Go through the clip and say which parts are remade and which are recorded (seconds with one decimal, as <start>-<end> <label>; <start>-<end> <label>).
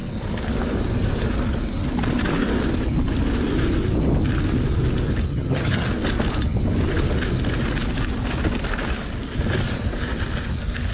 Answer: 0.0-5.3 recorded; 5.3-5.9 remade; 5.9-10.9 recorded